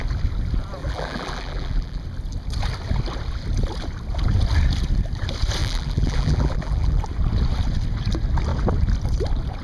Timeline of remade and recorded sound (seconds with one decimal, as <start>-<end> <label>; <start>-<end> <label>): 0.0-0.8 recorded; 0.8-2.0 remade; 2.0-5.6 recorded; 5.6-7.0 remade; 7.0-9.6 recorded